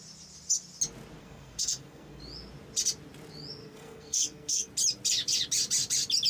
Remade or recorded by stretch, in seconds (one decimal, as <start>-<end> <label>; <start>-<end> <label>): 0.0-1.2 recorded; 1.2-2.2 remade; 2.2-3.6 recorded; 3.6-4.7 remade; 4.7-6.3 recorded